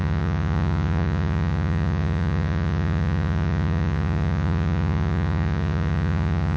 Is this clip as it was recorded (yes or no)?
no